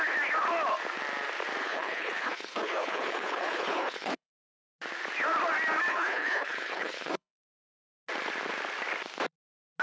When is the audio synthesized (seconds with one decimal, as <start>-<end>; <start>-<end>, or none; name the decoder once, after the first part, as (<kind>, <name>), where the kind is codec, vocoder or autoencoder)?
1.6-4.7 (codec, HILCodec); 5.9-7.6